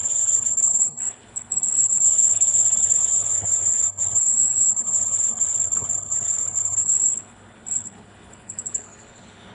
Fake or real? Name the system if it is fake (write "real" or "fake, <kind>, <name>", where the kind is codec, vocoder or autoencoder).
fake, codec, HILCodec